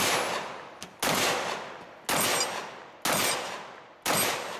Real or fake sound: real